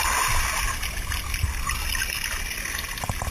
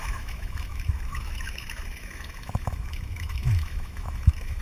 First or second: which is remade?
second